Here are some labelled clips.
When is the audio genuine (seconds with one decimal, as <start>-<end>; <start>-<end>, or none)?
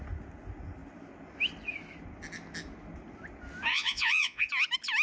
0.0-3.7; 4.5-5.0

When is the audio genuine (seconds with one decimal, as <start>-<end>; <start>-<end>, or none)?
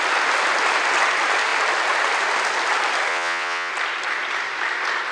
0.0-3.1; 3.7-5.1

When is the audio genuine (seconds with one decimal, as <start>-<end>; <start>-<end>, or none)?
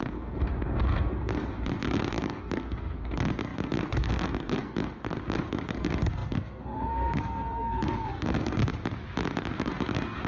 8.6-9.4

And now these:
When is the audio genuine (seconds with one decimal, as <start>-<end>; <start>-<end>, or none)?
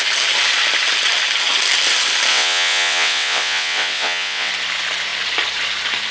0.0-2.3; 4.5-6.1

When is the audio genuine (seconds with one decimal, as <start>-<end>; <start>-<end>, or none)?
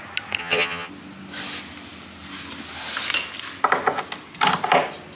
0.0-0.4; 0.9-5.2